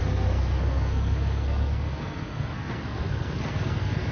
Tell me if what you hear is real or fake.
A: fake